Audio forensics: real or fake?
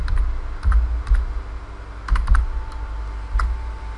real